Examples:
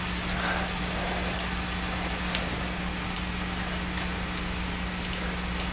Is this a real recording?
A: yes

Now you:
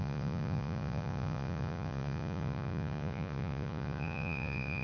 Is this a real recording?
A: no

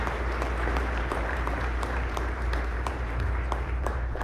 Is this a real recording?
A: no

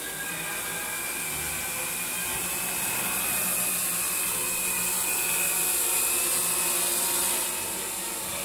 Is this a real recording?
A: yes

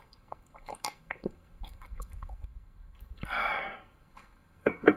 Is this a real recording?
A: no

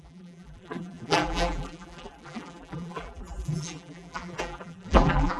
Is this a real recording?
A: no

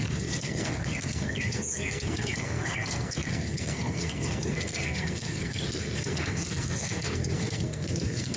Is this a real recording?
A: no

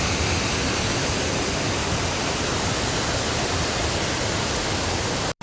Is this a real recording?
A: yes